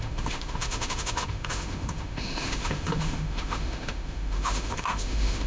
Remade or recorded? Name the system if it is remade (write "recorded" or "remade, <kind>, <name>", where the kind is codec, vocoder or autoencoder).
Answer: remade, autoencoder, DAC-VAE